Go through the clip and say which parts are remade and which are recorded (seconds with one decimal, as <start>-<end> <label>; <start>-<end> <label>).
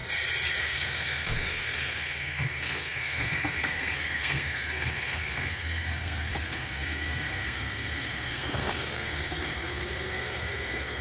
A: 0.0-0.6 recorded; 0.6-11.0 remade